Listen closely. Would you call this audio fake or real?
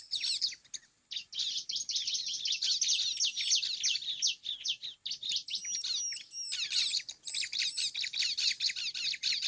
real